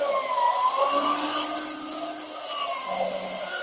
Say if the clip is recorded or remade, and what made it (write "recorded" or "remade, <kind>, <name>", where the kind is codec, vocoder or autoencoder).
recorded